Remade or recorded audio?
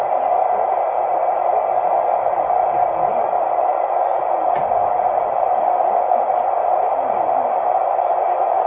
recorded